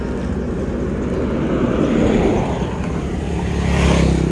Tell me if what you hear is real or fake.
real